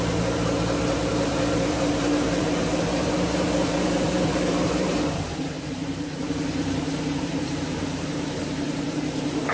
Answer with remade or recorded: remade